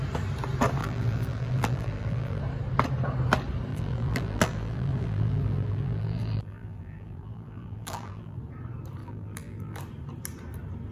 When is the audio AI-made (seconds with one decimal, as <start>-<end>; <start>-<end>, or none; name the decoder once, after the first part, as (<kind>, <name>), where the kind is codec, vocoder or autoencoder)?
0.8-2.4 (vocoder, BigVGAN v2); 3.7-8.4; 9.0-9.8